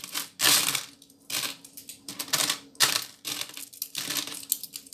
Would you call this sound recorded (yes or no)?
yes